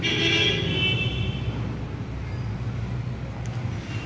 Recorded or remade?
recorded